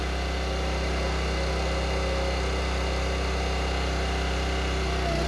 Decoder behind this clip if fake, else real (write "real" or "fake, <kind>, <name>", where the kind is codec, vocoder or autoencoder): real